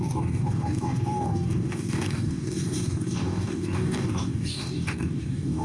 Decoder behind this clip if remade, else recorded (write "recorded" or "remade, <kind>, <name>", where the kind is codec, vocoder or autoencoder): remade, codec, DAC